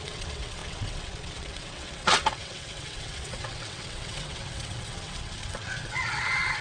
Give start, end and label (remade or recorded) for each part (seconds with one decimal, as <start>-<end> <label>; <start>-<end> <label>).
0.0-6.6 remade